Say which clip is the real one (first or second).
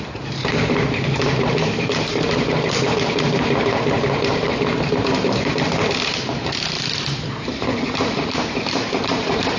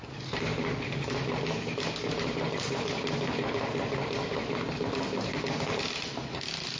second